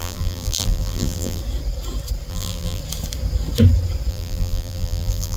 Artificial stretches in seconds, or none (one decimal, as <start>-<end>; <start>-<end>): 0.0-1.4; 2.3-2.8; 4.1-5.4